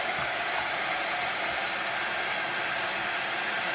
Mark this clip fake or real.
fake